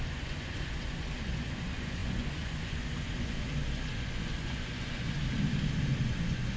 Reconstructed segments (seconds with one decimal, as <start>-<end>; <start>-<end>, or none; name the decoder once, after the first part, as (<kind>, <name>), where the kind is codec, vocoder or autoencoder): 0.0-5.2 (vocoder, Vocos); 6.0-6.6